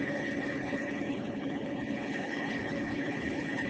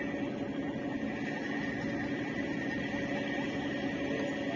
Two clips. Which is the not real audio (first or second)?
first